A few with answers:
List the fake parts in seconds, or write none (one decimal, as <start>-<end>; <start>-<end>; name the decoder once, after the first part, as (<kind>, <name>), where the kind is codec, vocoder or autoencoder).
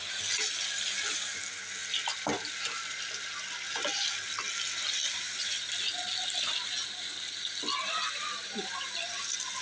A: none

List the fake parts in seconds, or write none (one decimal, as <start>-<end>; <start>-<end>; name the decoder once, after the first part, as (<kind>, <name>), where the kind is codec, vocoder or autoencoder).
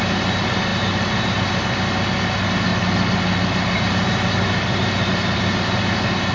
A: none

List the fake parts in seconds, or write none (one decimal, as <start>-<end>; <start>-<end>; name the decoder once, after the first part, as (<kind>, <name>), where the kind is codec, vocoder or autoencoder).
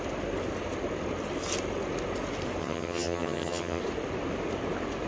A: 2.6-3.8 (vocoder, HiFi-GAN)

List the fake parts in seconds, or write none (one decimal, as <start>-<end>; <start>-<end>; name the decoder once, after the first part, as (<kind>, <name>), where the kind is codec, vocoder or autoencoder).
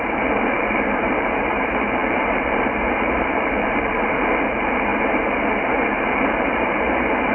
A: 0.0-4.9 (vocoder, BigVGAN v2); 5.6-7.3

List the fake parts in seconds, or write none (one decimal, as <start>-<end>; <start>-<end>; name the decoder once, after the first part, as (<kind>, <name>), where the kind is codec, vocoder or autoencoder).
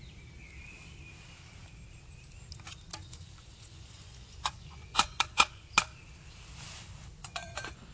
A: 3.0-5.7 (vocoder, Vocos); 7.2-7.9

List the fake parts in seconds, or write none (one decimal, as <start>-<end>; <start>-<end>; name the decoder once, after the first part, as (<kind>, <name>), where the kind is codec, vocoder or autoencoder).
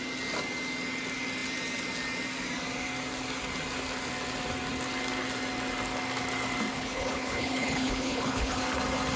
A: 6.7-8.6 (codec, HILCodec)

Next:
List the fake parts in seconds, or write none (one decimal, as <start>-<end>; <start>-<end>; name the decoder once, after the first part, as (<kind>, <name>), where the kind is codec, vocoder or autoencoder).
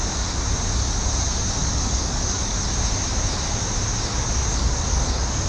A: 1.6-2.6 (codec, DAC); 4.5-5.5